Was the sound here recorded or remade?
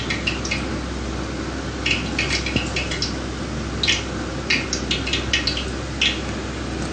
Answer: recorded